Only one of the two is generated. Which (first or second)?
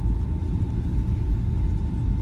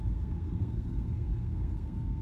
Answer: second